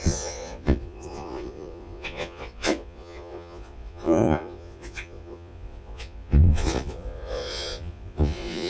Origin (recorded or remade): remade